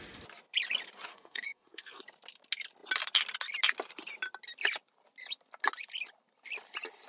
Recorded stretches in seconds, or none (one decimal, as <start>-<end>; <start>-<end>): 0.0-1.1; 2.0-7.1